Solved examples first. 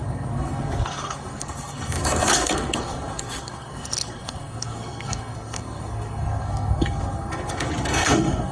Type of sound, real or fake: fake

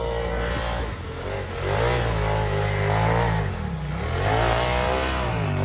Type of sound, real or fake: real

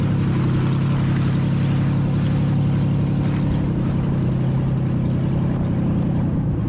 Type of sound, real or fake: real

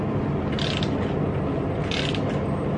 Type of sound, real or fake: real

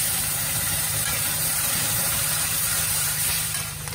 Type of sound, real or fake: fake